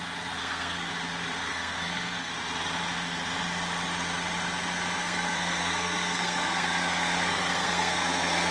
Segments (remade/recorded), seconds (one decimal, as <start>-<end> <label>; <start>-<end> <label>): 0.0-0.4 recorded; 0.4-0.9 remade; 0.9-1.5 recorded; 1.5-2.3 remade; 2.3-5.0 recorded; 5.0-8.5 remade